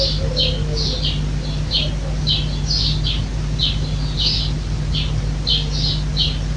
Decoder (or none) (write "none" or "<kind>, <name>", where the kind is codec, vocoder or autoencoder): none